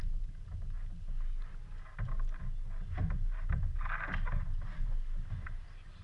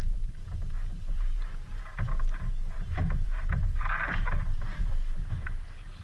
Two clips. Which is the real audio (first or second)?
first